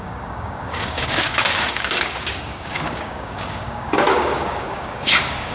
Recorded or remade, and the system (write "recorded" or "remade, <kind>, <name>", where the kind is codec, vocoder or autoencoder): remade, codec, DAC